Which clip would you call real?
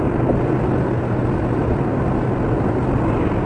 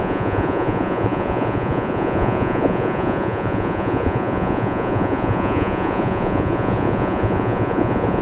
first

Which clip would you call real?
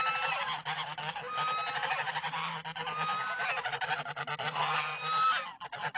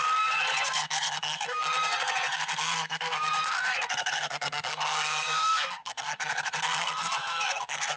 first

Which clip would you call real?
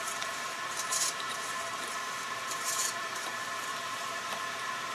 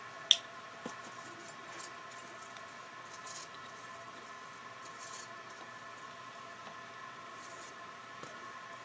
second